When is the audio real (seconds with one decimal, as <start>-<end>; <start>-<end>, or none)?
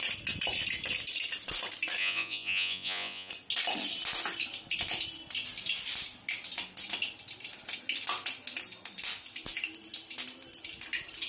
0.0-2.0; 3.3-11.3